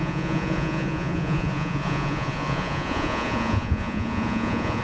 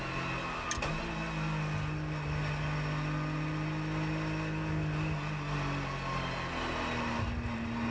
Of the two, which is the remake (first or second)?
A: first